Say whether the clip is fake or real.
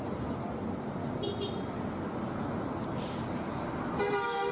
real